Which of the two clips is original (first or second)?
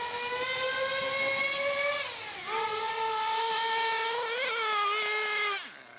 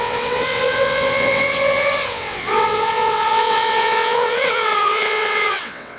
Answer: first